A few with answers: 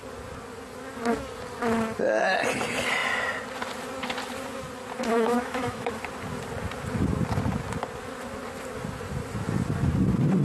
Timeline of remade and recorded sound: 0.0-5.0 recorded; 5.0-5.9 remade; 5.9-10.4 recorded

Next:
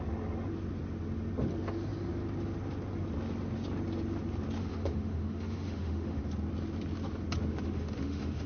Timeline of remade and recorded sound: 0.0-4.6 recorded; 4.6-6.2 remade; 6.2-7.5 recorded; 7.5-8.5 remade

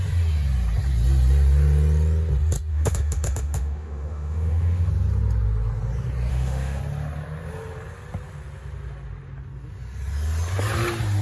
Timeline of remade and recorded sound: 0.0-2.7 recorded; 2.7-4.9 remade; 4.9-6.3 recorded; 6.3-6.8 remade; 6.8-11.2 recorded

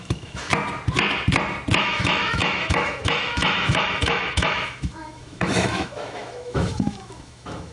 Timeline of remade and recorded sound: 0.0-0.5 remade; 0.5-1.8 recorded; 1.8-7.7 remade